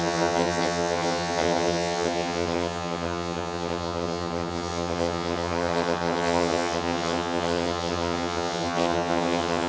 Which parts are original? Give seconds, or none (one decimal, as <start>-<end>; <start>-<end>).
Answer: none

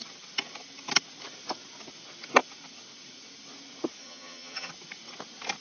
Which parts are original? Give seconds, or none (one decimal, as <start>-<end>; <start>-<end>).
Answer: 0.0-4.0; 4.7-5.6

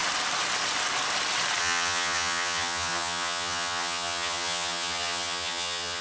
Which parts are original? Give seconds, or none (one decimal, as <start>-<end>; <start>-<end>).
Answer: 0.0-1.6

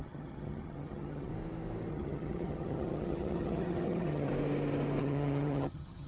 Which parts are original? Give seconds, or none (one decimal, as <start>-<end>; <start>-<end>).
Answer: 1.3-1.9; 4.3-5.0

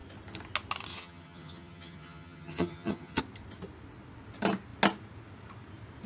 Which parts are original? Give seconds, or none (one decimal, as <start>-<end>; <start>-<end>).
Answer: 0.0-0.9; 3.2-6.1